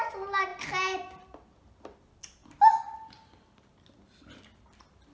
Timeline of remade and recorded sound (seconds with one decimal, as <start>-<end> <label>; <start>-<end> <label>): 0.0-5.1 recorded